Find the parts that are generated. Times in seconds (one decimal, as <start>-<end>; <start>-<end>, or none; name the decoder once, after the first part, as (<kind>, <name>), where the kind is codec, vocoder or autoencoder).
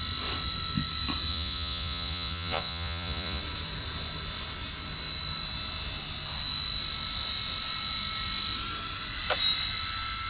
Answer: 1.3-3.4 (vocoder, Vocos)